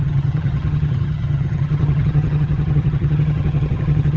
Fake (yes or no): yes